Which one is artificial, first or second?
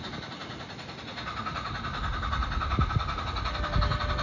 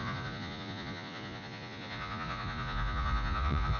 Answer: second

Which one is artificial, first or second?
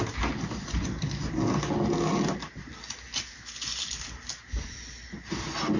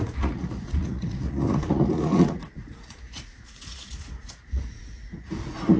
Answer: second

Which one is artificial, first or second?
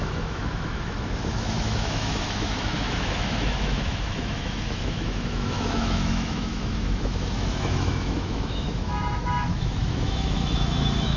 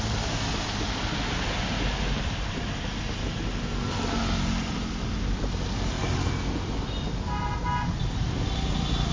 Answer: first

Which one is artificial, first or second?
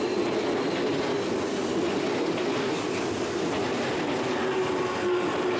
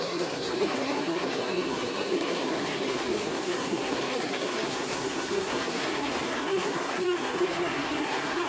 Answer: second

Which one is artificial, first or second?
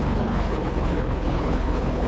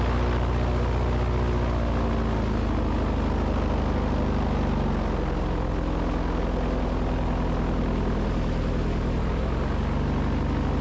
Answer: first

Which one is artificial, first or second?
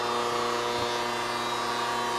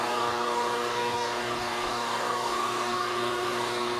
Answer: second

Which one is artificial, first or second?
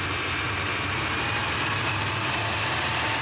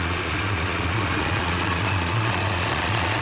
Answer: second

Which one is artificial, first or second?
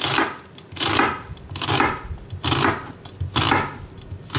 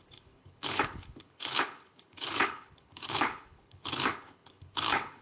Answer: second